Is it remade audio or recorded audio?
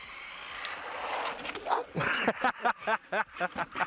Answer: recorded